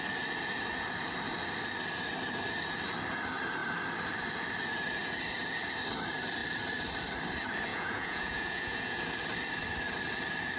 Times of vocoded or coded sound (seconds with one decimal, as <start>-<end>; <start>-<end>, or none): 7.7-9.1